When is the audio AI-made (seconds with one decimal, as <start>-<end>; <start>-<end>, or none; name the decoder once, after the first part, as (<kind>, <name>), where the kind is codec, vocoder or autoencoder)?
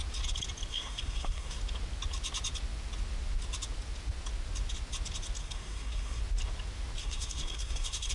0.7-1.6 (codec, SNAC); 5.4-6.2; 7.0-8.1